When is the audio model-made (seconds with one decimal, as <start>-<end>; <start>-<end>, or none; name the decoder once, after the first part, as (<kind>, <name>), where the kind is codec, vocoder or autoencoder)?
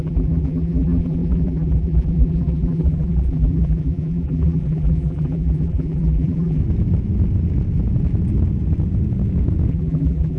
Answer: 0.0-6.6 (vocoder, BigVGAN v2); 9.7-10.4